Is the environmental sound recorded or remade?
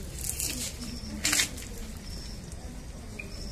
recorded